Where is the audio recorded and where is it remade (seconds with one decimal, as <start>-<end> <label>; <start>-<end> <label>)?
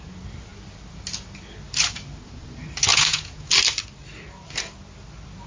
0.0-2.9 recorded; 2.9-3.5 remade; 3.5-5.5 recorded